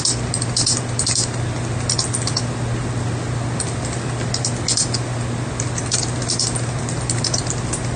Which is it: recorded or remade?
recorded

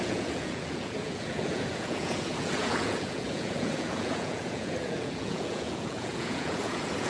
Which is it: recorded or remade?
remade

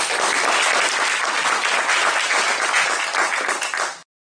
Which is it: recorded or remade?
recorded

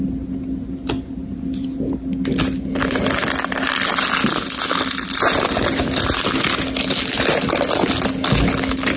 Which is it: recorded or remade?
recorded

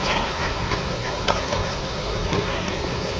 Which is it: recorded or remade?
remade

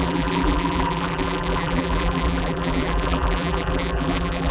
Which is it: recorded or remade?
remade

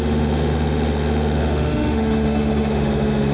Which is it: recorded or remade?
remade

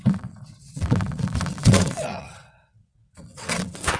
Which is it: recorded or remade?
remade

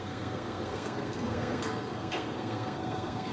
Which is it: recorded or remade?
remade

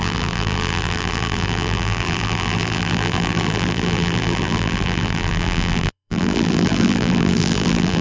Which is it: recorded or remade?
remade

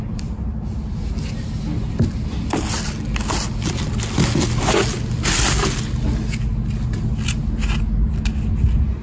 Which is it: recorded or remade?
recorded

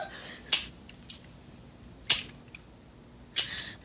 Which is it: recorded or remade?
recorded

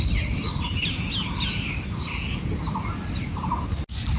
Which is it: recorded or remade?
recorded